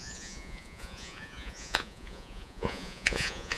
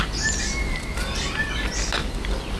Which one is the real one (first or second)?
second